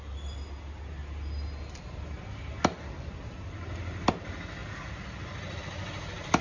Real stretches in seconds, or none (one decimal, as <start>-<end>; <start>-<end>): 0.0-6.4